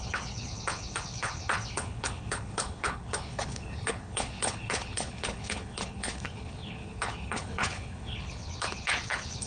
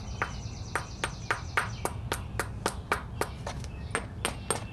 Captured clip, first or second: second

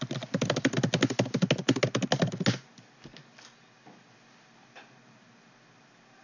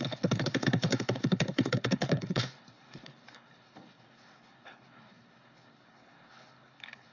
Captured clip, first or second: first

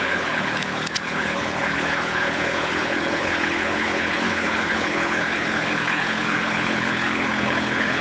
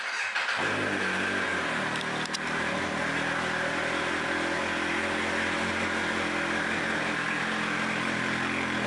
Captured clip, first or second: second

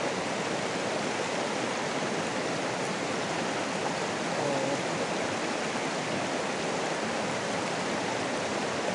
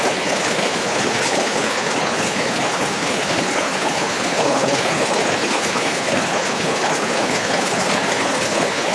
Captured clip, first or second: first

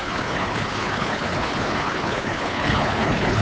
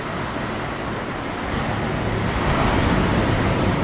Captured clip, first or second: second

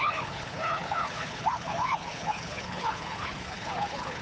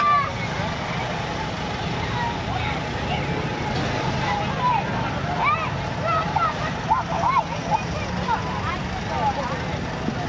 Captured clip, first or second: second